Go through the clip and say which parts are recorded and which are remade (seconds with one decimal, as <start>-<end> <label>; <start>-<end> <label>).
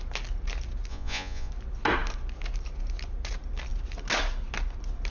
0.0-0.9 recorded; 0.9-1.5 remade; 1.5-5.1 recorded